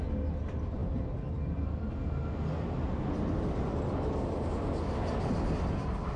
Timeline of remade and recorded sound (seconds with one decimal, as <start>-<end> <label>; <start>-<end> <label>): 0.0-6.2 recorded